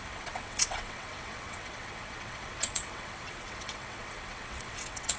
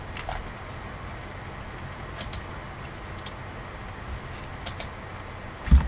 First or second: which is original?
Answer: second